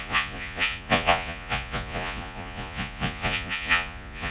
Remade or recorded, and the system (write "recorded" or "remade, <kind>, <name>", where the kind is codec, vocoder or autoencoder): remade, vocoder, Vocos